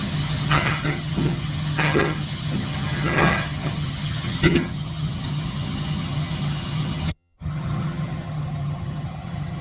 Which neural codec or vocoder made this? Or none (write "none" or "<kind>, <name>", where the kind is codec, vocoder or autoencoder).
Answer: vocoder, HiFi-GAN